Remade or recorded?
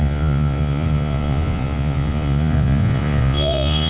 remade